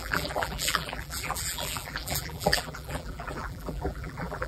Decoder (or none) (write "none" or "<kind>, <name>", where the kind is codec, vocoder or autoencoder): vocoder, BigVGAN v2